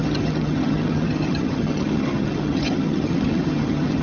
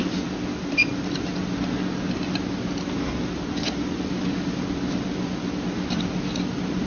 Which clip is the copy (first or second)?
first